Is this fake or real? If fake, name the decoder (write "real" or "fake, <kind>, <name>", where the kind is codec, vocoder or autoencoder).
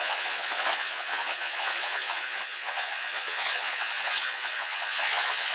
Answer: fake, vocoder, Vocos